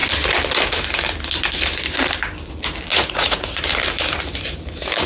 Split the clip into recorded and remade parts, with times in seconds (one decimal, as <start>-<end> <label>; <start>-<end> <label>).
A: 0.0-2.9 recorded; 2.9-3.6 remade; 3.6-5.1 recorded